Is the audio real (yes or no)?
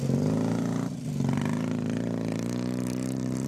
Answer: yes